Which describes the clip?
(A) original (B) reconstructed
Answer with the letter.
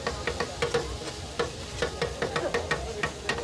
A